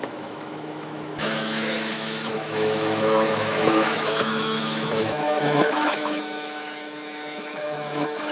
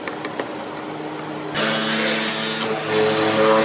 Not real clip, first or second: first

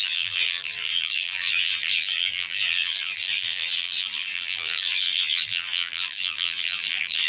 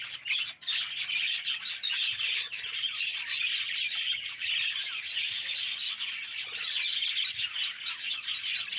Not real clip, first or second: first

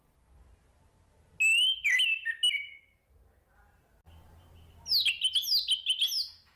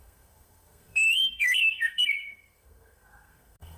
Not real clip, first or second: second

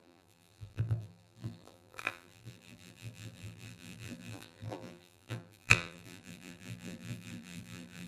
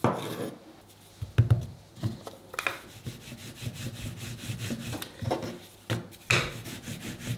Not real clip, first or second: first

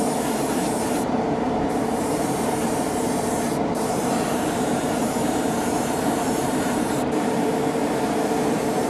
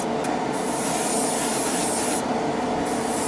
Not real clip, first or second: first